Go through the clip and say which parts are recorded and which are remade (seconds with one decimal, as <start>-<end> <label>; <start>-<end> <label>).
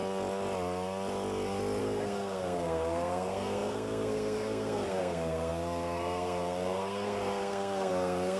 0.0-1.8 recorded; 1.8-8.4 remade